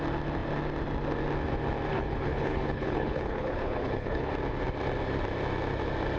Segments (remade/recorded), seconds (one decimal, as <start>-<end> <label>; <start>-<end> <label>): 0.0-1.9 recorded; 1.9-4.3 remade; 4.3-6.2 recorded

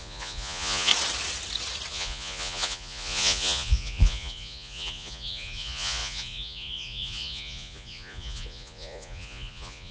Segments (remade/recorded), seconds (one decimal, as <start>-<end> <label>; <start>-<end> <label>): 0.0-0.9 remade; 0.9-1.9 recorded; 1.9-9.9 remade